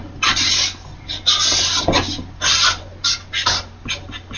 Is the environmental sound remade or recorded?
recorded